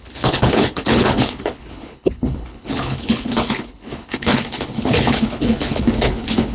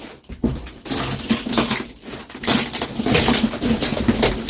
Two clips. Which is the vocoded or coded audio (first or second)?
first